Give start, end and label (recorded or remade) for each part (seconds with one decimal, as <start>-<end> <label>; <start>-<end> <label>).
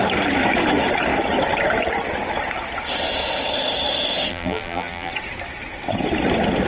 0.0-4.3 recorded; 4.3-5.1 remade; 5.1-6.7 recorded